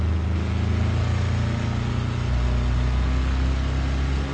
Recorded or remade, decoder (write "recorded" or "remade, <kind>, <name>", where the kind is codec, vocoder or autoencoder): recorded